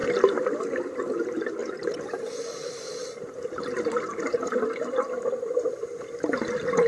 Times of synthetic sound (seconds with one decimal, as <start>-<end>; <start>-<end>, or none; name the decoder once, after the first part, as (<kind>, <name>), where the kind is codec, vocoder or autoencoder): 1.6-5.7 (vocoder, BigVGAN v2)